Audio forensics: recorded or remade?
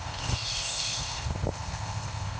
remade